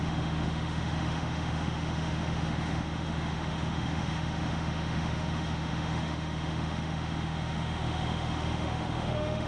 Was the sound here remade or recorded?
remade